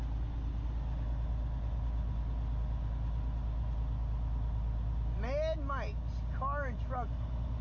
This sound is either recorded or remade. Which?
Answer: recorded